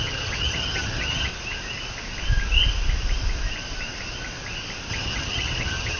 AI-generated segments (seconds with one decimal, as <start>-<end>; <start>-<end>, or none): 0.0-1.3; 4.9-6.0